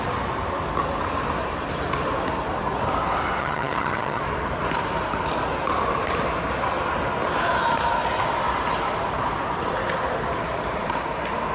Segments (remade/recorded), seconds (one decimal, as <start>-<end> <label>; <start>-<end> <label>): 0.0-3.4 recorded; 3.4-4.2 remade; 4.2-11.5 recorded